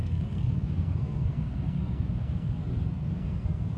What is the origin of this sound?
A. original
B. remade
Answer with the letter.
B